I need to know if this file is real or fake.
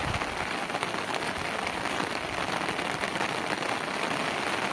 real